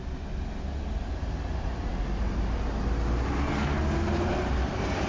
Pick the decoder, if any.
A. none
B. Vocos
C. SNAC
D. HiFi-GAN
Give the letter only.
A